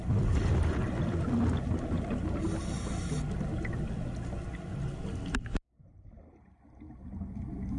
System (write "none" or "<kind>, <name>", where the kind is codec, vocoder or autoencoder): none